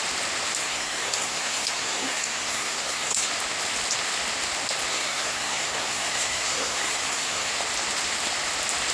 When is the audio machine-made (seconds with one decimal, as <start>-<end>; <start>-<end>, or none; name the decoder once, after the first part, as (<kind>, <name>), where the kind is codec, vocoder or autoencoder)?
0.6-3.3 (codec, SNAC); 4.9-7.5